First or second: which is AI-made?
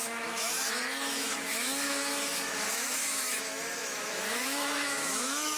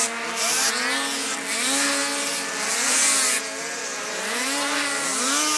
first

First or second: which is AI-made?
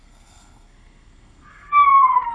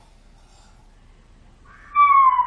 first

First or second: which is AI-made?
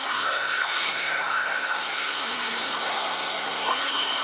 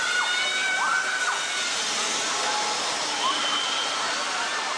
first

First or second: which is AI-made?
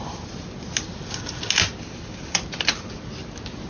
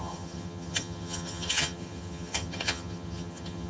second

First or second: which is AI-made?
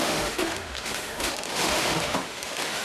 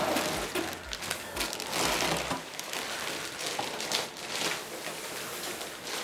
first